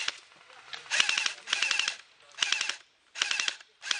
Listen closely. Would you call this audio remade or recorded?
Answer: recorded